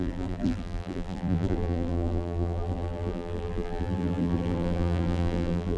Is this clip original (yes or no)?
no